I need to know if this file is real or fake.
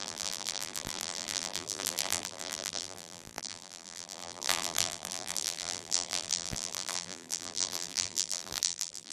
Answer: fake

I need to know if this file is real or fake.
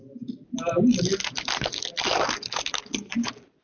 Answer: real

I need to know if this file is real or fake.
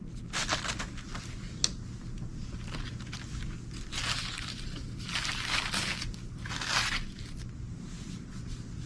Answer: real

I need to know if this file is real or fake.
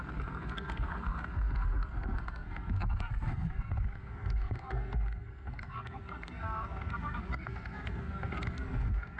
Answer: fake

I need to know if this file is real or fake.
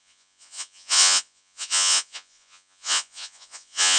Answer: fake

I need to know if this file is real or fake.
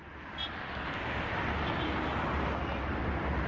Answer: real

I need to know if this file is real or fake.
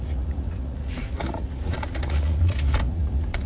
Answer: fake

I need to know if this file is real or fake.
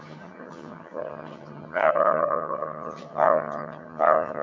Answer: fake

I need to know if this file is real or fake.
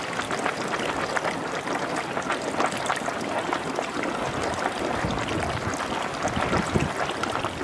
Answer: real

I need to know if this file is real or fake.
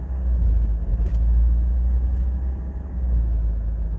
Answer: real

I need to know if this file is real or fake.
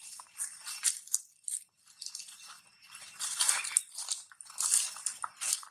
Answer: real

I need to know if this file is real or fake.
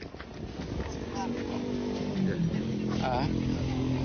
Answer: real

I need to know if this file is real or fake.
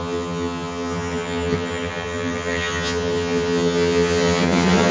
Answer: fake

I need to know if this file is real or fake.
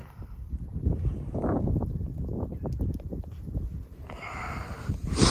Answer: real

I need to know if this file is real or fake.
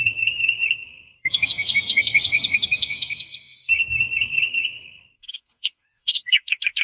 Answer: fake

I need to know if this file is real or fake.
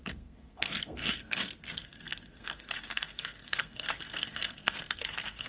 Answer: fake